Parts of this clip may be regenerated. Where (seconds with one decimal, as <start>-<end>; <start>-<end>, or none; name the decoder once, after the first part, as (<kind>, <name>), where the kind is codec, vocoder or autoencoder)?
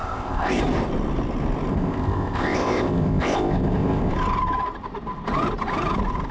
0.0-0.6 (codec, ZipCodec); 1.7-4.1